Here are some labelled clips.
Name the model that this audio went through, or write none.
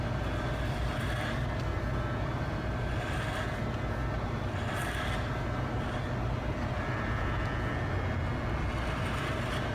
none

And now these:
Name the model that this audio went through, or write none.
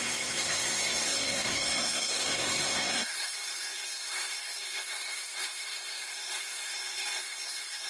codec, SNAC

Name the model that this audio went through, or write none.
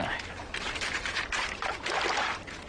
none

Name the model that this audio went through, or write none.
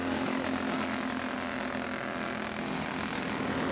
none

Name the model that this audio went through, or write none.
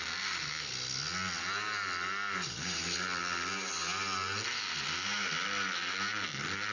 none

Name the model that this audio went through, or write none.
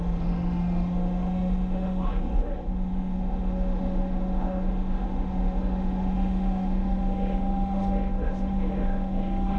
autoencoder, DAC-VAE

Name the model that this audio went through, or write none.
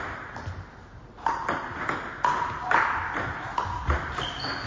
none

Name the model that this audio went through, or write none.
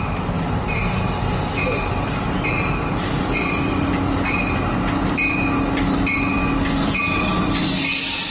none